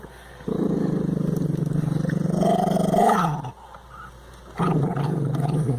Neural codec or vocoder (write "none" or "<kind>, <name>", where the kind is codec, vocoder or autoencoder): none